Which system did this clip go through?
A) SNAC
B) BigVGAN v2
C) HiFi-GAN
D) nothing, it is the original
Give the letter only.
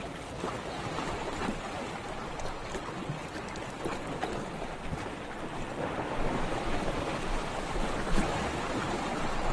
D